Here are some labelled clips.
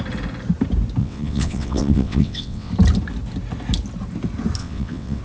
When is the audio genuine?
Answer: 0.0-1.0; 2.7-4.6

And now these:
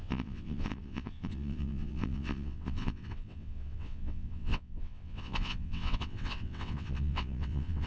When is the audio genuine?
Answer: none